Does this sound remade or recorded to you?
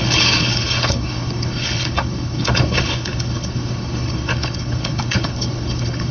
remade